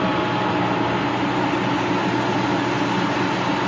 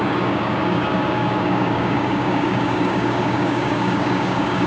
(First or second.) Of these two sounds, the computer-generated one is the second